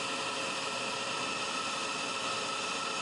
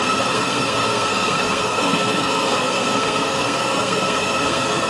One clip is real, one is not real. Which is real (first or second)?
first